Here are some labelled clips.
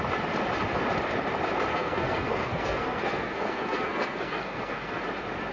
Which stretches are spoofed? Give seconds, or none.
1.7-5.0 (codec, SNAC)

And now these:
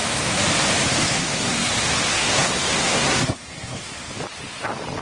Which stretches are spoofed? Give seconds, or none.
1.0-1.7 (codec, SNAC); 2.1-4.1

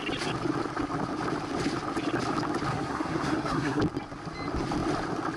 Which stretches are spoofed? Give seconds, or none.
2.7-3.8 (codec, SNAC)